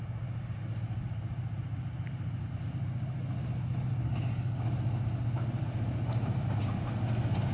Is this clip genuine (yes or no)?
yes